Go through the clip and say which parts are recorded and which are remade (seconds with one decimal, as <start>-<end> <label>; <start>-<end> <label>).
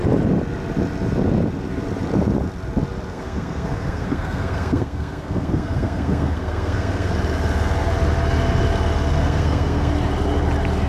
0.0-3.1 recorded; 3.1-7.1 remade; 7.1-9.2 recorded; 9.2-9.9 remade; 9.9-10.9 recorded